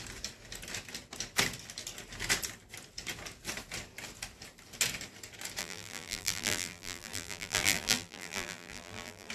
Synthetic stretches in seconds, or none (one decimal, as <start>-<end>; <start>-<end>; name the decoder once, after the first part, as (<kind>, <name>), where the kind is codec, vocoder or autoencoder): 5.6-9.3 (vocoder, BigVGAN v2)